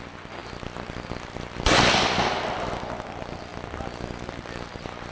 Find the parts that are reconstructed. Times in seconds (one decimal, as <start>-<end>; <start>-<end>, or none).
none

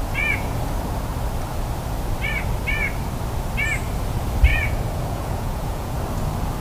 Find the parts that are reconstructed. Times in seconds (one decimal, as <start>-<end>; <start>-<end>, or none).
0.0-0.6; 4.5-6.0

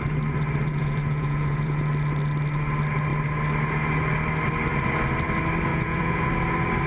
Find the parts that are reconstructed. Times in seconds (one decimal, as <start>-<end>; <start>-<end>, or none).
0.7-1.9; 5.7-6.3